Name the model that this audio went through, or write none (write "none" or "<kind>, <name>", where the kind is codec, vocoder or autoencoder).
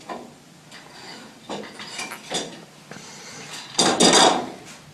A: none